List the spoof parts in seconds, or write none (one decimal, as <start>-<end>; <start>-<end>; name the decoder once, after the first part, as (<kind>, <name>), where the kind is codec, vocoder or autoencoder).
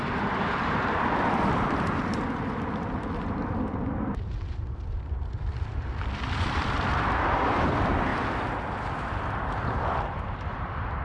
0.0-8.1 (vocoder, BigVGAN v2); 8.6-11.0